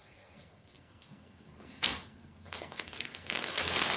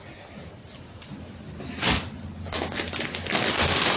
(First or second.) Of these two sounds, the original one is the second